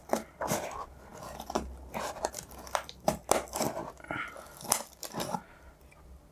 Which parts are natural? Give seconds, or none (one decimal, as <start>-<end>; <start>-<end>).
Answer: 0.0-6.3